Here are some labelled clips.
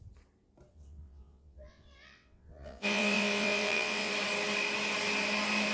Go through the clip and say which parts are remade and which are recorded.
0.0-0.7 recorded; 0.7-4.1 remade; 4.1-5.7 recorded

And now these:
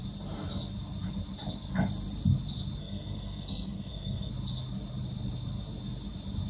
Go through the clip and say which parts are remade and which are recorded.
0.0-2.8 recorded; 2.8-4.3 remade; 4.3-6.5 recorded

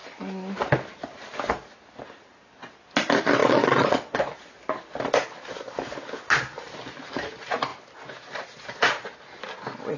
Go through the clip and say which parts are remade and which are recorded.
0.0-3.4 recorded; 3.4-4.2 remade; 4.2-10.0 recorded

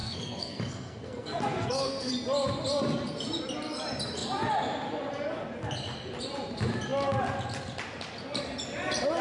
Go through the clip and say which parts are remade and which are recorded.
0.0-2.1 remade; 2.1-9.2 recorded

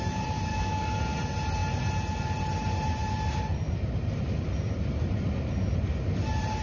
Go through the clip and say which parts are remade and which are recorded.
0.0-0.5 recorded; 0.5-1.0 remade; 1.0-6.6 recorded

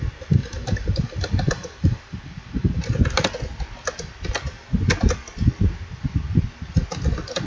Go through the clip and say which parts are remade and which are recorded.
0.0-0.4 recorded; 0.4-2.9 remade; 2.9-7.5 recorded